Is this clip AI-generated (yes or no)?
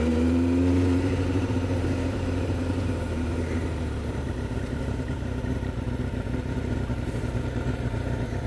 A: yes